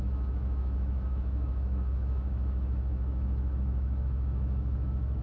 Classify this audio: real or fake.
fake